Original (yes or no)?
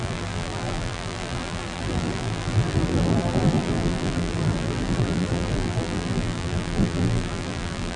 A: no